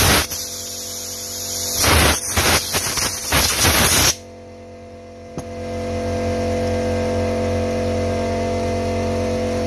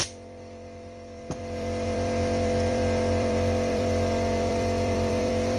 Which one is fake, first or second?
second